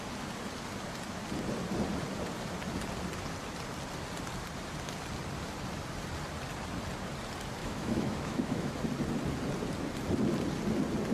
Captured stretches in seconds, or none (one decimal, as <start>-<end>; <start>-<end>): 0.0-7.6; 8.8-11.1